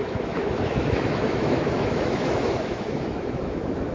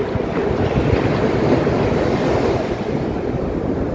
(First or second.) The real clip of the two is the second